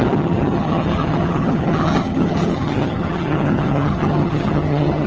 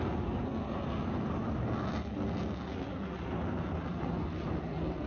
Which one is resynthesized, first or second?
first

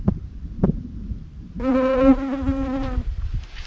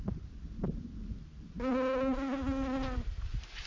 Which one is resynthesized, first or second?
first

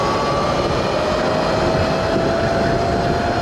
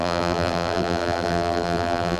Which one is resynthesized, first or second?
second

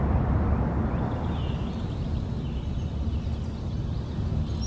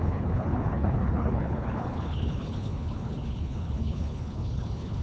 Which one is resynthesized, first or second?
second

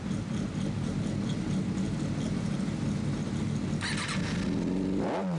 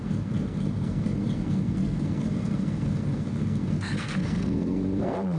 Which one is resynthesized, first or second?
second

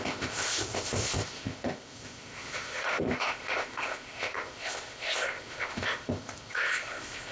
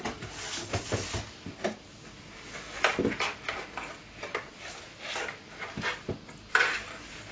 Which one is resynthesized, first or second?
first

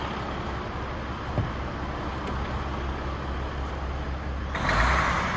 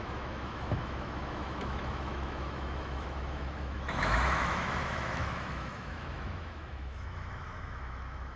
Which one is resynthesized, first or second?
second